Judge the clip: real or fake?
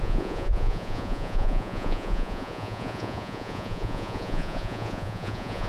fake